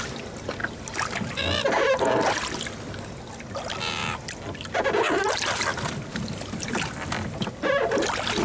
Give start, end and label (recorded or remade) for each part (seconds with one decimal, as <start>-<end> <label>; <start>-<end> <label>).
0.0-8.4 recorded